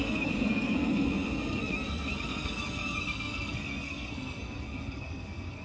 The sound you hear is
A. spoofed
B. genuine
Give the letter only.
A